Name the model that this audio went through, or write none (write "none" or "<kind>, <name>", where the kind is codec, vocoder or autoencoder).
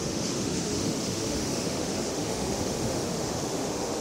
autoencoder, DAC-VAE